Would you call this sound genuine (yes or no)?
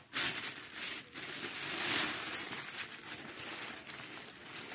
yes